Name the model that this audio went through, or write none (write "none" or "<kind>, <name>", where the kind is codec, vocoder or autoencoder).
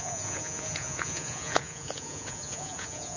vocoder, Vocos